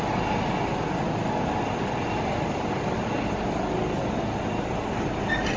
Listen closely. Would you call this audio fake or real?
real